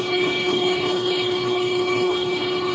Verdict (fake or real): fake